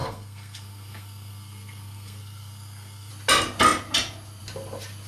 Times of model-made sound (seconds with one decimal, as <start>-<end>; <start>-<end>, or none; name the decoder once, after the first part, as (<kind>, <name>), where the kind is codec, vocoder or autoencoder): 0.0-3.1 (codec, SNAC)